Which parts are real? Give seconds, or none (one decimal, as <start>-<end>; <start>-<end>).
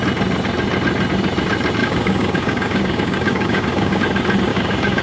0.0-1.8; 4.0-4.5